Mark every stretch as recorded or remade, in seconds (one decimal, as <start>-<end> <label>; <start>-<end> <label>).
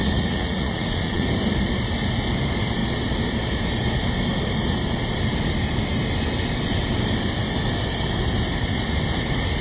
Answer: 0.0-1.3 remade; 1.3-9.6 recorded